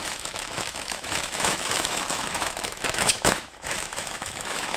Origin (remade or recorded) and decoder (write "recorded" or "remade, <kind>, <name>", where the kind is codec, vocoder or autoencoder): remade, autoencoder, DAC-VAE